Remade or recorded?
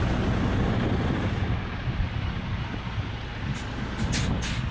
recorded